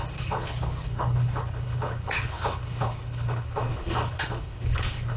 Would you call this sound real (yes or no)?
no